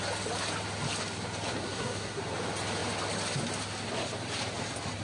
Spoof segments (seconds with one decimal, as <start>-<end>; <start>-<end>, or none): 1.6-2.2